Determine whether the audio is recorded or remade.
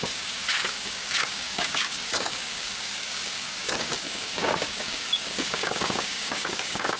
remade